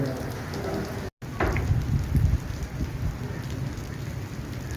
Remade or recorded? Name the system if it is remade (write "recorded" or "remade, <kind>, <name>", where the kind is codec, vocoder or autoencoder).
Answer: recorded